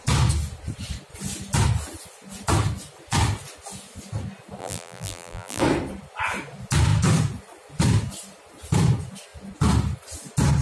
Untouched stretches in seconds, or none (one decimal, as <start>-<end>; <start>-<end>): 0.0-4.6; 5.6-10.6